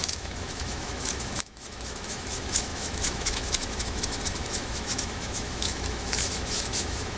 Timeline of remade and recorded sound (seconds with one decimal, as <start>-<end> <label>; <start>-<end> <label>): 0.0-7.2 remade